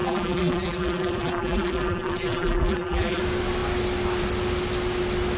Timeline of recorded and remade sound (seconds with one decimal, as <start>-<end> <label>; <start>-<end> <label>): 0.0-3.2 remade; 3.2-5.4 recorded